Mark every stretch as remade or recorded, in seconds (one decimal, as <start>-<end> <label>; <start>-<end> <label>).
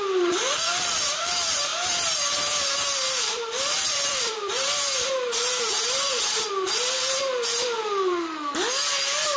0.0-8.5 remade; 8.5-9.4 recorded